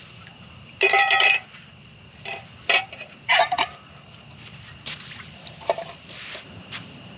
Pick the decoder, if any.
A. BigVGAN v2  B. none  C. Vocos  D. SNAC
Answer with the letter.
A